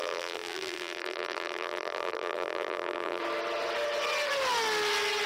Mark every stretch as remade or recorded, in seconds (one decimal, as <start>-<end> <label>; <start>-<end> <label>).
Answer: 0.0-3.2 remade; 3.2-5.3 recorded